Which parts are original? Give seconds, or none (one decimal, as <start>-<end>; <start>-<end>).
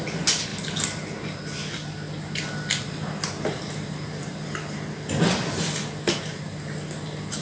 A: 0.0-7.4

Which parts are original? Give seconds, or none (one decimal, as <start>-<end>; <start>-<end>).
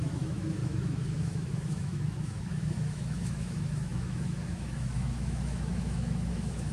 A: none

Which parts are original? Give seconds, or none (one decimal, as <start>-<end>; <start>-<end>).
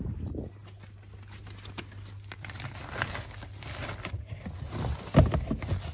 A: 0.0-5.9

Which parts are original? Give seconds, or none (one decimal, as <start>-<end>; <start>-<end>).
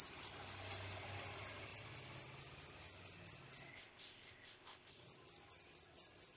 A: 0.0-3.7; 4.9-6.4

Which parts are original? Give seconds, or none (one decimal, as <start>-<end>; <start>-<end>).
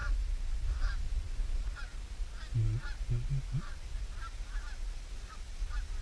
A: 0.0-6.0